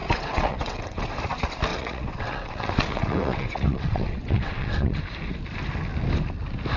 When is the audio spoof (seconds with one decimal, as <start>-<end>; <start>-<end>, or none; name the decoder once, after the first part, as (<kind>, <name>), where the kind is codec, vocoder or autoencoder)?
0.0-1.1 (vocoder, WaveNeXt); 1.7-5.0